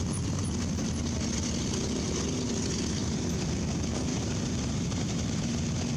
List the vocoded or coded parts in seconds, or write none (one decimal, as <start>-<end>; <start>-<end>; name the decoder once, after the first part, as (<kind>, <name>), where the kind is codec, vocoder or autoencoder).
3.0-3.5 (vocoder, BigVGAN v2); 4.1-5.6